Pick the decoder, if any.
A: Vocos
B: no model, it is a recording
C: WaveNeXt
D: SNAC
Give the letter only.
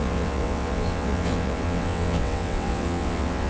C